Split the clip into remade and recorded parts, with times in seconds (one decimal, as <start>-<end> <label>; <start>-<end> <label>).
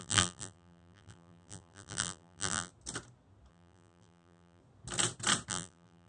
0.0-2.7 remade; 2.7-3.5 recorded; 3.5-4.6 remade; 4.6-5.5 recorded; 5.5-6.1 remade